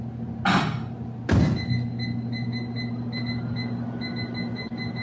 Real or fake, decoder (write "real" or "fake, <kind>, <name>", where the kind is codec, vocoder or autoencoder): real